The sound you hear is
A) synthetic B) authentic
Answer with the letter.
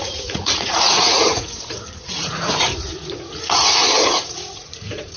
A